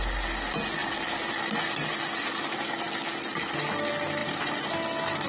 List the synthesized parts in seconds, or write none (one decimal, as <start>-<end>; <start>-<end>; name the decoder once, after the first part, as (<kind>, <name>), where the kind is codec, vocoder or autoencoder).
4.2-4.7 (vocoder, BigVGAN v2)